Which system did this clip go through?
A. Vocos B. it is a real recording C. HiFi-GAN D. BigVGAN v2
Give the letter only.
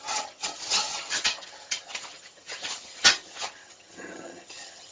C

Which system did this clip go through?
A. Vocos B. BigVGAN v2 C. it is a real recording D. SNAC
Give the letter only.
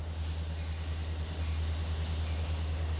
C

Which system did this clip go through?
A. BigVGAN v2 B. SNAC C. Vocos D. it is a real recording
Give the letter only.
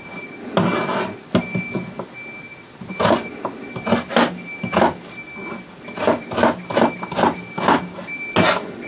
D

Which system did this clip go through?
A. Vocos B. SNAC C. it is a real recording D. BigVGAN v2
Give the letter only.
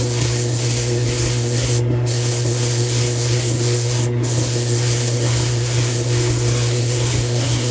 B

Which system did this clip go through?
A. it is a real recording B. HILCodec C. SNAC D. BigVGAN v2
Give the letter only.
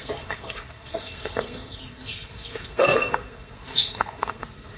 C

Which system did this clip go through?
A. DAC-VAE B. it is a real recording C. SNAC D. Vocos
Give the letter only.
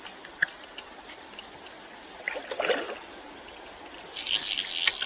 B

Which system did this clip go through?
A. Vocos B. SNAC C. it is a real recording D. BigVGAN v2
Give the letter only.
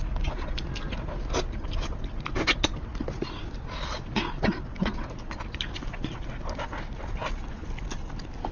C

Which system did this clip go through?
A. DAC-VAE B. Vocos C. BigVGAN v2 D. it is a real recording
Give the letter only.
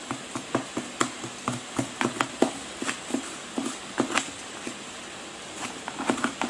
D